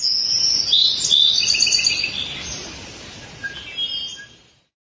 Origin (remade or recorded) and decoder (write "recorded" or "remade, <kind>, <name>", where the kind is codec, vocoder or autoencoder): recorded